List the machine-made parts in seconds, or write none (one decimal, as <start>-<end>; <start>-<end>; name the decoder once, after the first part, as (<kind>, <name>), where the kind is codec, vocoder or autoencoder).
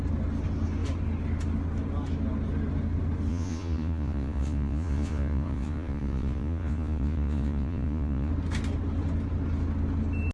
3.3-8.3 (vocoder, Vocos)